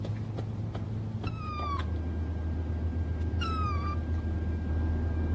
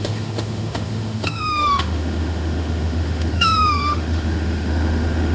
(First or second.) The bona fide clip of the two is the first